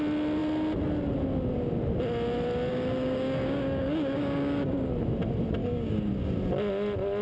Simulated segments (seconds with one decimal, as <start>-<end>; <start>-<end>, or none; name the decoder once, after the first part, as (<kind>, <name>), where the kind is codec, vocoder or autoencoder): 2.7-4.9 (codec, DAC); 5.6-6.1